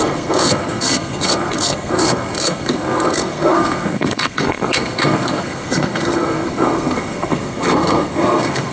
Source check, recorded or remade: remade